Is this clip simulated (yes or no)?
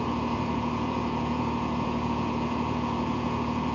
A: yes